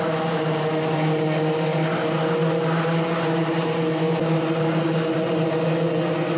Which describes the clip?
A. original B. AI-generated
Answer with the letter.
A